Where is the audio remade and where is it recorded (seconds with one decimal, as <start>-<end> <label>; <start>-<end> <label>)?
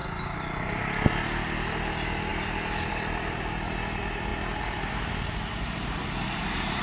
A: 0.0-6.8 recorded